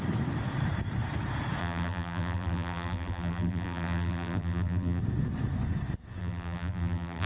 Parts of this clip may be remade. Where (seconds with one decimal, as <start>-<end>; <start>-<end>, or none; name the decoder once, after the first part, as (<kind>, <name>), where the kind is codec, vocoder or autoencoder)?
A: 1.6-5.0 (vocoder, BigVGAN v2); 6.2-7.3